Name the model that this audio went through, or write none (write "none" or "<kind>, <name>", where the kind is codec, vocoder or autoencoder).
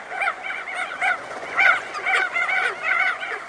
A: vocoder, Vocos